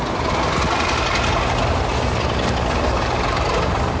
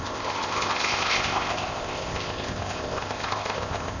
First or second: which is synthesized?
second